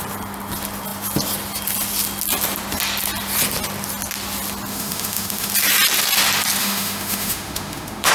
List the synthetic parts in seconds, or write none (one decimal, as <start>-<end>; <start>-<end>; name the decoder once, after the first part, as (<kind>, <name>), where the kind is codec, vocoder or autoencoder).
4.7-5.5 (autoencoder, DAC-VAE); 6.6-8.1